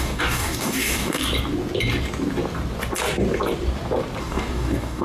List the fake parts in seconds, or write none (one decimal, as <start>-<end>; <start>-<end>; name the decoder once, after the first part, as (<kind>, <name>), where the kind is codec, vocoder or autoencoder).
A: 0.0-1.2 (codec, DAC); 4.2-5.0